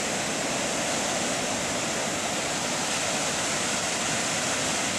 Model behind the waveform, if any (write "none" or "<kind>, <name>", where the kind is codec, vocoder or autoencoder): none